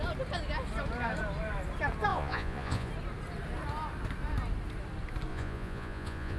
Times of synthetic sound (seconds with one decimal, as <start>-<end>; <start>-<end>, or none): 2.1-2.9; 5.3-6.4